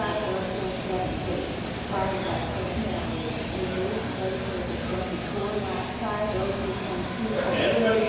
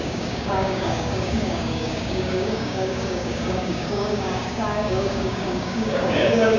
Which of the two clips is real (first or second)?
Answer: first